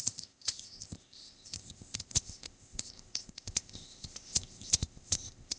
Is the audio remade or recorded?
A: remade